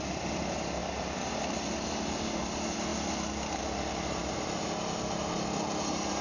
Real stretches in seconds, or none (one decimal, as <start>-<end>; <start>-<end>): 0.8-1.3

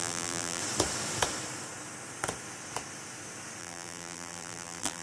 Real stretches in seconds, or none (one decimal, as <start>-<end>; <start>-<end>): 0.6-3.6

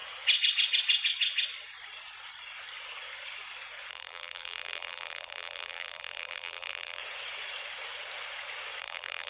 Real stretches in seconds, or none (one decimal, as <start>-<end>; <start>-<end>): 0.0-3.9; 7.0-8.8

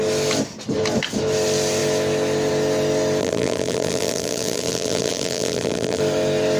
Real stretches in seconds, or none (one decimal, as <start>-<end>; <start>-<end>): 0.0-3.2; 6.0-6.6

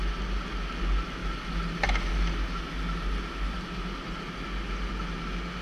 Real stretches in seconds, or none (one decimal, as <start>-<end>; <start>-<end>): 0.0-5.6